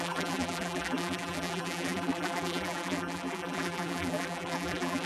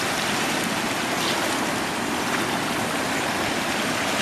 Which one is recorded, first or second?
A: second